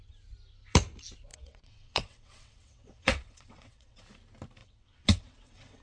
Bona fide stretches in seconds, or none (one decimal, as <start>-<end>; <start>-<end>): 0.0-1.3; 4.0-4.6